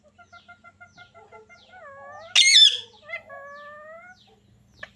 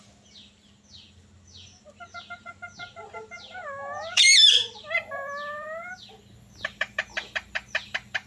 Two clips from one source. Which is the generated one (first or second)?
second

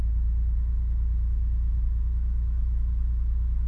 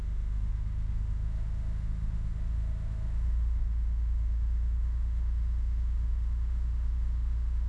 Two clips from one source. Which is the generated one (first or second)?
second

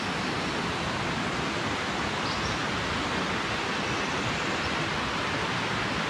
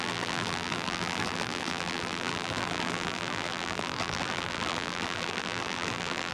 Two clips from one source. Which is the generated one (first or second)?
second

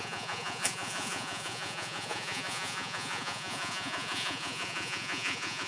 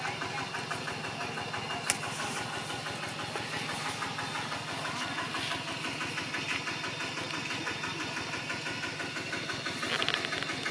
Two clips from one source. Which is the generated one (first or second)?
first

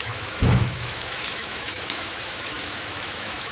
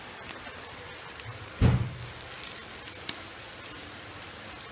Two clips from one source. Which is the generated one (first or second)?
first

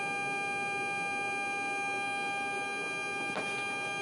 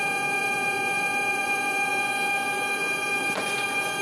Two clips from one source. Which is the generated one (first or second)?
second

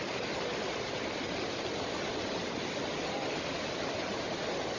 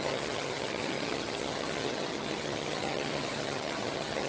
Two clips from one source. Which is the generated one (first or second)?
second